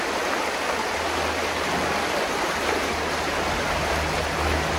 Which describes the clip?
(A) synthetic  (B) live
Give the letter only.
B